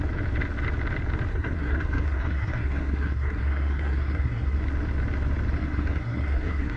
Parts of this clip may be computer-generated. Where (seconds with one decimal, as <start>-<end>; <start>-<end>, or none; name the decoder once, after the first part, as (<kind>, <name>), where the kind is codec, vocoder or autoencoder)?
1.3-4.6 (codec, SNAC); 5.6-6.8